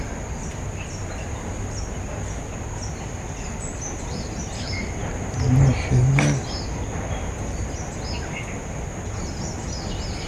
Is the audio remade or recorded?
recorded